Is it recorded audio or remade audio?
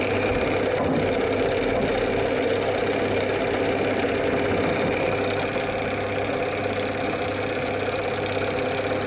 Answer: recorded